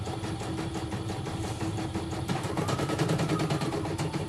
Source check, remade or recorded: remade